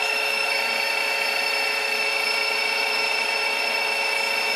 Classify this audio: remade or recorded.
remade